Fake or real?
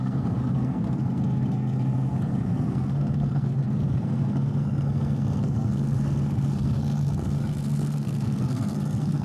fake